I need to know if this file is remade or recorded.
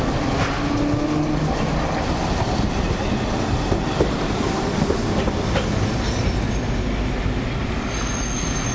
recorded